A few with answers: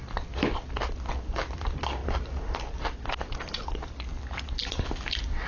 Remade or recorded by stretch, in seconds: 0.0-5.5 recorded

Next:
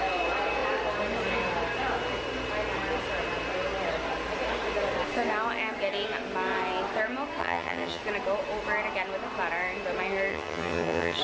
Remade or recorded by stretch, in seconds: 0.0-7.4 recorded; 7.4-8.0 remade; 8.0-10.3 recorded; 10.3-11.2 remade

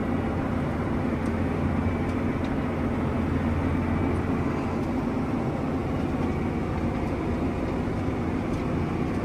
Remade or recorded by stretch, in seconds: 0.0-9.2 recorded

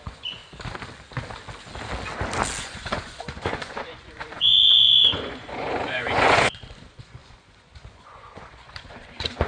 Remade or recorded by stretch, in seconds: 0.0-0.4 remade; 0.4-2.6 recorded; 2.6-9.5 remade

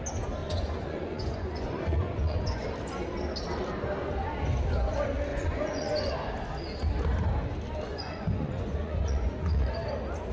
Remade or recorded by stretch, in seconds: 0.0-0.4 recorded; 0.4-2.7 remade; 2.7-5.3 recorded; 5.3-6.1 remade; 6.1-7.9 recorded; 7.9-9.7 remade; 9.7-10.3 recorded

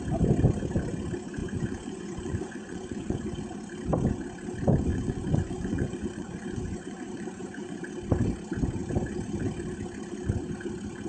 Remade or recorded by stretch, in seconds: 0.0-1.4 recorded; 1.4-3.4 remade; 3.4-4.9 recorded; 4.9-7.8 remade; 7.8-11.1 recorded

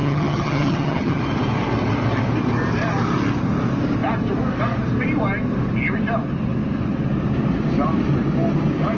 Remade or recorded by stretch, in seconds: 0.0-1.2 remade; 1.2-9.0 recorded

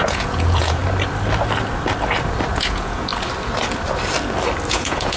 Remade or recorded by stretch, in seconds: 0.0-0.8 remade; 0.8-2.5 recorded; 2.5-3.1 remade; 3.1-4.7 recorded; 4.7-5.2 remade